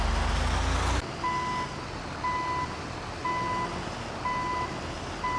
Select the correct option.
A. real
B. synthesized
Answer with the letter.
A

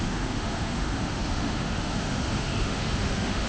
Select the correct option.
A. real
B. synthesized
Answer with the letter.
B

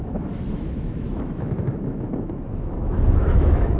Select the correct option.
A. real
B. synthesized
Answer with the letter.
B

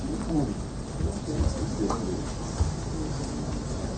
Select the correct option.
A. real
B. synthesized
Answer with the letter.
A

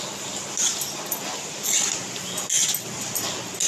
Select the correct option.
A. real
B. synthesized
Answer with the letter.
A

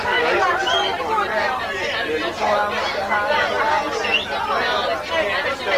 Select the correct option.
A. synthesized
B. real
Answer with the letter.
B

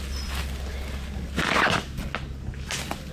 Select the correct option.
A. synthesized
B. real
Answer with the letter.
B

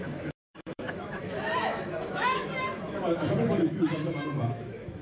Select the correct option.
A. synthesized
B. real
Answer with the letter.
A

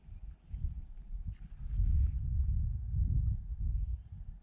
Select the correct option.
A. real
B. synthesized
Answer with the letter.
A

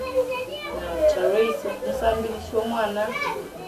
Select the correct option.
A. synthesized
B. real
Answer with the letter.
B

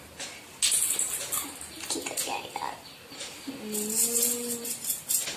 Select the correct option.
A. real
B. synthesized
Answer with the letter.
A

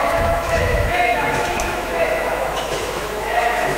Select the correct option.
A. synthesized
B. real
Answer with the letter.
A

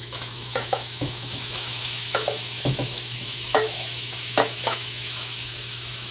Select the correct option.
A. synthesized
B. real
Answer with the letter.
A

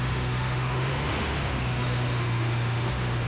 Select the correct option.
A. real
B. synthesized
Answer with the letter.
B